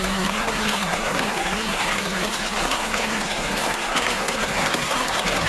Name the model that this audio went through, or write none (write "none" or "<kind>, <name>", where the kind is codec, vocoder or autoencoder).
codec, SNAC